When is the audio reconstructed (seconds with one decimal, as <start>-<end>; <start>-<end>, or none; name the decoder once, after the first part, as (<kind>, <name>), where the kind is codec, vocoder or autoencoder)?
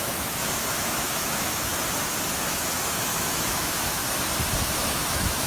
0.0-1.7 (autoencoder, DAC-VAE); 2.4-4.0; 4.6-5.5